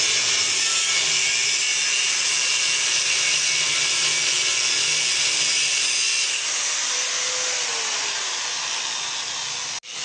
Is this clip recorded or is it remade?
recorded